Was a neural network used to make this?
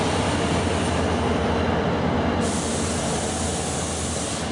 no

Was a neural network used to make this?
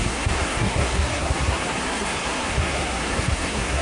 yes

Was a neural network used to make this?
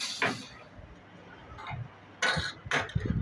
no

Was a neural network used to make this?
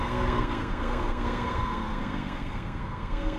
yes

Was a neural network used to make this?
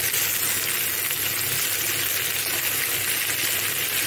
no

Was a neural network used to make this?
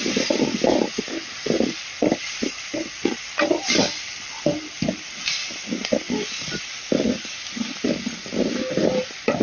no